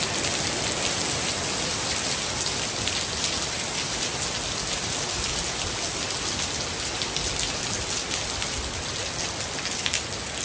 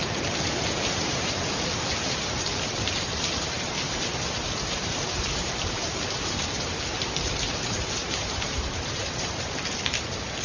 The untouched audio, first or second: first